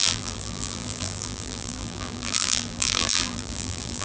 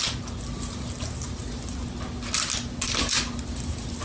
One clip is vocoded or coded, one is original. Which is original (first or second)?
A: second